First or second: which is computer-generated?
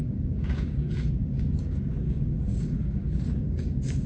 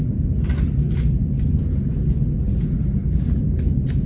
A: first